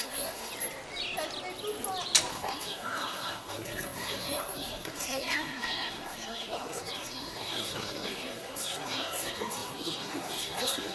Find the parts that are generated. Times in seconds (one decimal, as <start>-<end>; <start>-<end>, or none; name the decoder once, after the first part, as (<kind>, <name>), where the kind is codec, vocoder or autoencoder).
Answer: 0.0-0.5 (codec, SNAC); 2.3-10.9